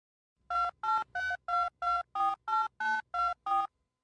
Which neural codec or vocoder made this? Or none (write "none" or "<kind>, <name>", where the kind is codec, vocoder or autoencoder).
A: none